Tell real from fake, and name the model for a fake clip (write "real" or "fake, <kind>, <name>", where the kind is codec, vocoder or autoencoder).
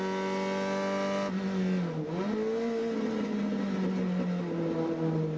real